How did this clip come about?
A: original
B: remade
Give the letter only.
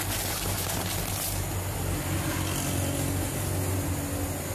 A